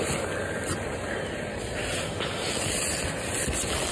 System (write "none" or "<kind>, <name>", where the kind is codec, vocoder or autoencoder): none